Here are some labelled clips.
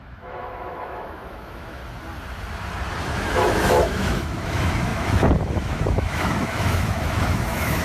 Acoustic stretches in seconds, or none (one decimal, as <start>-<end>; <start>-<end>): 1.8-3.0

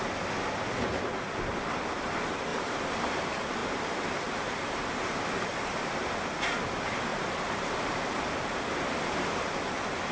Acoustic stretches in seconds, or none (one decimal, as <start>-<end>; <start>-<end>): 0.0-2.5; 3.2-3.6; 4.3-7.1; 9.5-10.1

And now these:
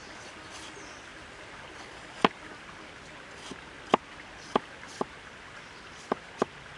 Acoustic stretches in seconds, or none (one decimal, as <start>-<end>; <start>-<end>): 0.0-6.8

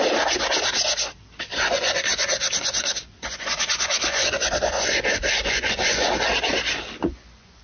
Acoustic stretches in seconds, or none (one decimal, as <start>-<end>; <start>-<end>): 0.0-1.5; 6.1-7.0

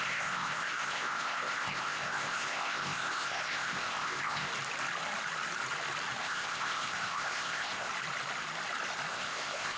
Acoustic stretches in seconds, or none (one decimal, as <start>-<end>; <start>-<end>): 4.5-6.2; 7.9-9.1

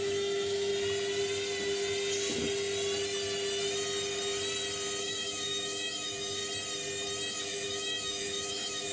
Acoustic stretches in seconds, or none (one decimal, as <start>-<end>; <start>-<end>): 0.7-5.0; 6.4-7.3